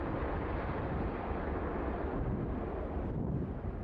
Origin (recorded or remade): recorded